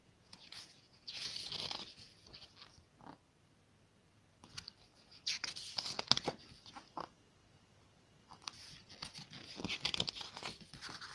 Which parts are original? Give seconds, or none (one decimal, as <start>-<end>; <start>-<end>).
1.5-11.1